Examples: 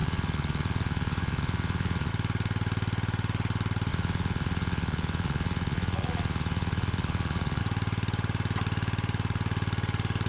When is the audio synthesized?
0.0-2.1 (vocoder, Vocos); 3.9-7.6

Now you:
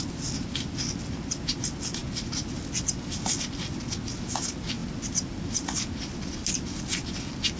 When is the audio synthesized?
none

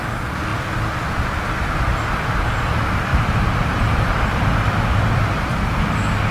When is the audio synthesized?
3.1-5.4 (vocoder, BigVGAN v2)